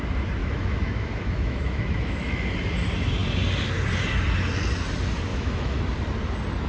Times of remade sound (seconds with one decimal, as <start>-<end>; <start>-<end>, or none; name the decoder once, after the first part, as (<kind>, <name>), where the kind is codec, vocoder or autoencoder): 0.4-2.5 (autoencoder, DAC-VAE); 5.3-5.8